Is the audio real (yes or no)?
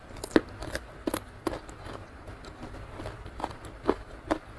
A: yes